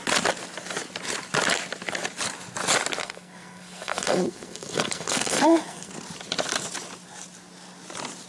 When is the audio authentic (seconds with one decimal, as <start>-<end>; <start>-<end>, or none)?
0.0-3.0; 5.9-8.3